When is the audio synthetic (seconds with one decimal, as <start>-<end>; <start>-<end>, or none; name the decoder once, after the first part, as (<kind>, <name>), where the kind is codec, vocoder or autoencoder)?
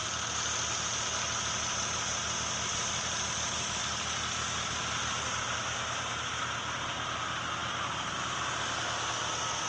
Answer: none